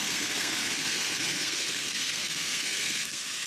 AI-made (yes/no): yes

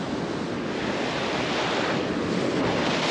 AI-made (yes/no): no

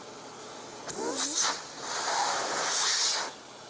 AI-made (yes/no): no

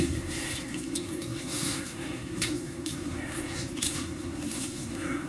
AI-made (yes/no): yes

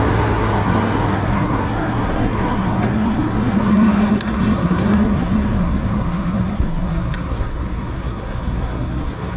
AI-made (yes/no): yes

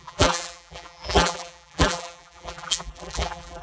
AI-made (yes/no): yes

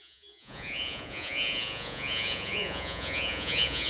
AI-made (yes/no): yes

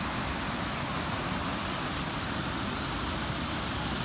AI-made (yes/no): no